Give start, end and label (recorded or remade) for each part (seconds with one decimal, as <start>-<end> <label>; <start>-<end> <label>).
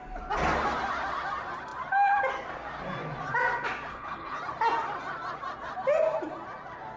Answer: 0.0-3.9 recorded; 3.9-4.4 remade; 4.4-7.0 recorded